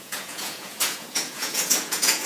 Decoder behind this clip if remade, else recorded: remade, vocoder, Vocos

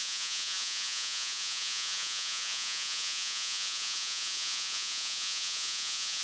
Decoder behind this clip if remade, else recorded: remade, vocoder, Vocos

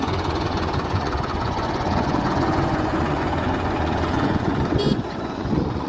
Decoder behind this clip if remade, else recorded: remade, vocoder, Vocos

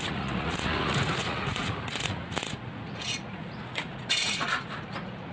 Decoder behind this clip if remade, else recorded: remade, vocoder, Vocos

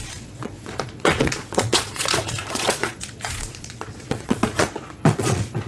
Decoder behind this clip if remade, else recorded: remade, vocoder, Vocos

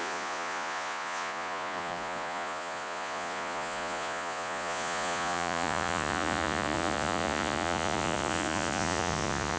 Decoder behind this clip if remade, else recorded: remade, vocoder, Vocos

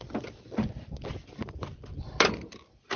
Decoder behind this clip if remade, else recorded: recorded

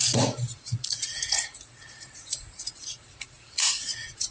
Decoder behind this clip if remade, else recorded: remade, vocoder, Vocos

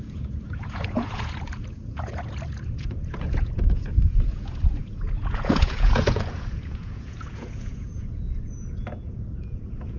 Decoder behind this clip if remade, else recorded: remade, vocoder, Vocos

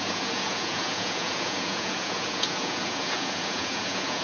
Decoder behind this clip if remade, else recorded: remade, vocoder, Vocos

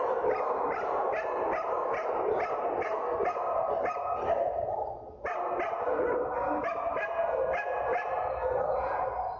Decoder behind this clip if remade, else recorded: recorded